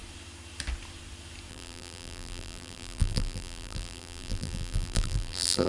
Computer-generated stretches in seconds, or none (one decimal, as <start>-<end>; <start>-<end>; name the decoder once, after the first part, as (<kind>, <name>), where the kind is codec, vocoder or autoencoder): 1.5-5.7 (vocoder, BigVGAN v2)